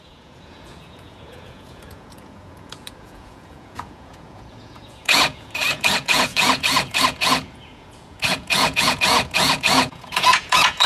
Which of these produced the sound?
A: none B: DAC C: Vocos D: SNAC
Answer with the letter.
C